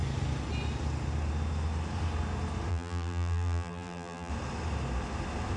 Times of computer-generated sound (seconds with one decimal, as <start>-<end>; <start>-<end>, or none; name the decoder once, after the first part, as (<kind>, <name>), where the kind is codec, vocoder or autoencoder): 2.7-4.3 (vocoder, BigVGAN v2)